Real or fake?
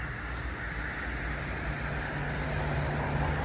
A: real